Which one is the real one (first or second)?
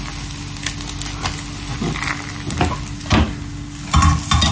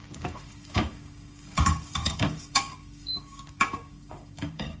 first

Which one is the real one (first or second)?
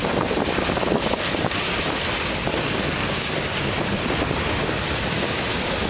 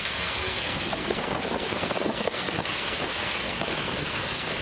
first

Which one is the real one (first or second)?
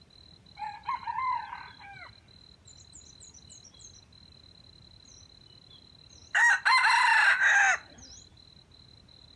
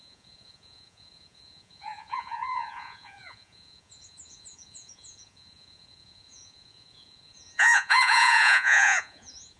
first